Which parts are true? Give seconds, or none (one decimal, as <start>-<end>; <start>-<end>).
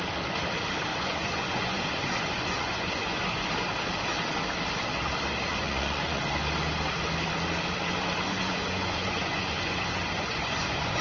0.0-0.9; 3.5-5.5; 6.2-8.3